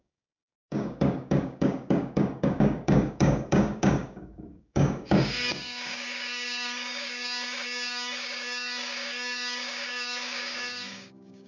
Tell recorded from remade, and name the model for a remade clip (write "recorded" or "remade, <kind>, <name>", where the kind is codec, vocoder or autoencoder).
remade, codec, DAC